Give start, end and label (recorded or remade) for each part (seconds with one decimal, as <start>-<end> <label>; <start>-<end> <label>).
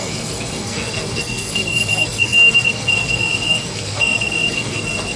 0.0-5.2 remade